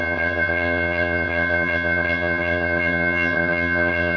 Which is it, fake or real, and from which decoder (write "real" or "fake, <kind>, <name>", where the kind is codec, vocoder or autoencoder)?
fake, vocoder, HiFi-GAN